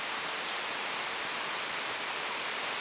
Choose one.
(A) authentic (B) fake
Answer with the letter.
A